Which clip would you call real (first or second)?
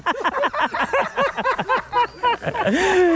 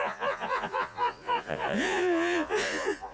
first